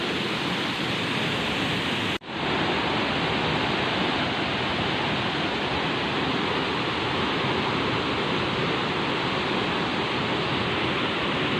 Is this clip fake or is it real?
real